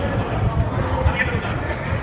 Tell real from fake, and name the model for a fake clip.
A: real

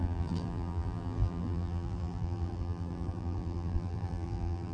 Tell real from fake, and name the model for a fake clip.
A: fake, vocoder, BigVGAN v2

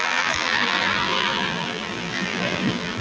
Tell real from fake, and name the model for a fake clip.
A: fake, vocoder, BigVGAN v2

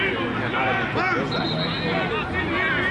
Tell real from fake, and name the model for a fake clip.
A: real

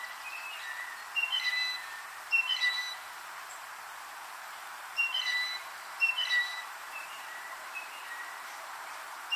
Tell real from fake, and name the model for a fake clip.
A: fake, vocoder, BigVGAN v2